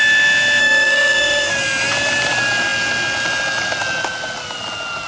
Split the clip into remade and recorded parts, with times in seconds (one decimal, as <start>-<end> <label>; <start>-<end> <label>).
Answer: 0.0-0.6 recorded; 0.6-1.5 remade; 1.5-5.1 recorded